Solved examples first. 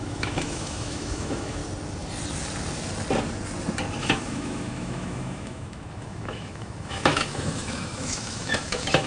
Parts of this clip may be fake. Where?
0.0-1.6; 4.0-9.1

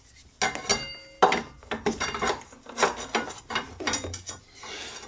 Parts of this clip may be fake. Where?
none

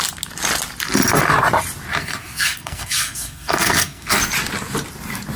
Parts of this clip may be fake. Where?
1.9-4.2